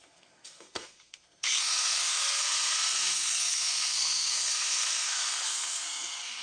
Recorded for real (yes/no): no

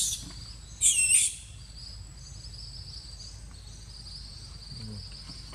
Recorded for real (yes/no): yes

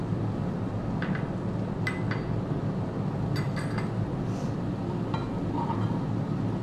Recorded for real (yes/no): yes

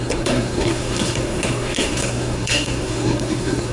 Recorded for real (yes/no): no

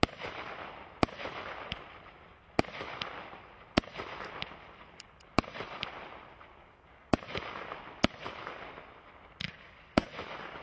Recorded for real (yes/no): yes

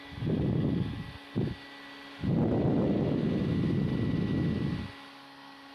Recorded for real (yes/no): yes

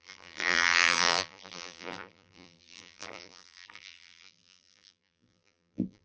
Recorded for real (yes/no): no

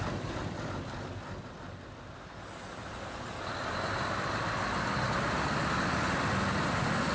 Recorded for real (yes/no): yes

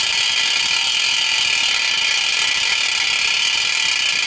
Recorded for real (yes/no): yes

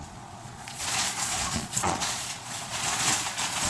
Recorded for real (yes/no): no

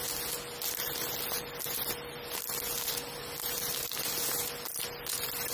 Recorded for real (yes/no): yes